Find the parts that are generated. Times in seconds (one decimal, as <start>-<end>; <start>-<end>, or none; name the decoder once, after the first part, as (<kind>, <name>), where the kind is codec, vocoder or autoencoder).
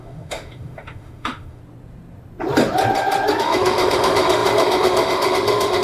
0.0-1.6 (autoencoder, DAC-VAE); 3.4-5.8